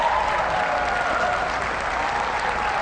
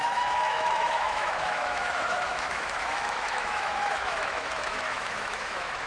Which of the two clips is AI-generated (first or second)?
second